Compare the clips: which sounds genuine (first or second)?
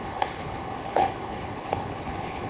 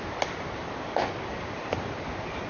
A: second